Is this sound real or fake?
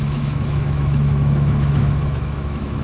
fake